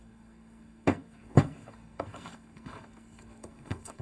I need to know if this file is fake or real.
fake